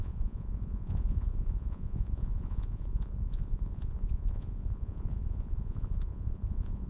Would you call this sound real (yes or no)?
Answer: no